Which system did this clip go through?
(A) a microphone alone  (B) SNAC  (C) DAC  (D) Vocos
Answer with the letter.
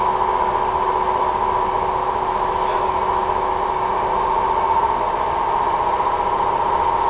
A